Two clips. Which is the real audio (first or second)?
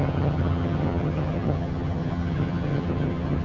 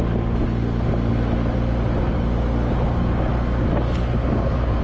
second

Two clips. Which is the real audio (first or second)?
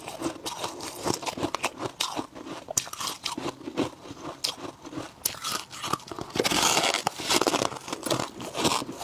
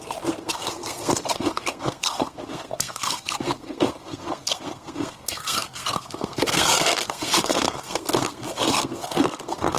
first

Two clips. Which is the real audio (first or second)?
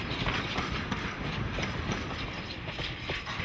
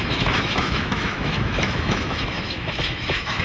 first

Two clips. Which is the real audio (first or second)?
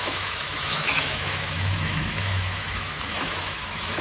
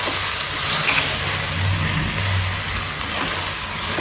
second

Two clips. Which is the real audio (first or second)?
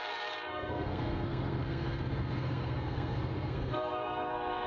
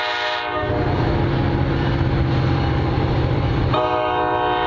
second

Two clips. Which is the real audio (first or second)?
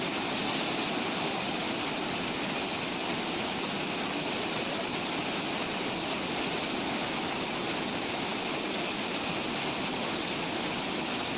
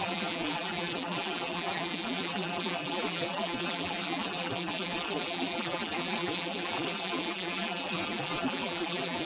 first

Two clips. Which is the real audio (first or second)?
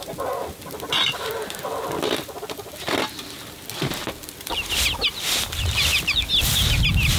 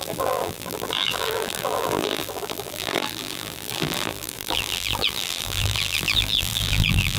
first